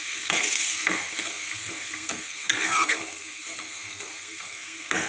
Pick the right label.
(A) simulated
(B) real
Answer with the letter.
A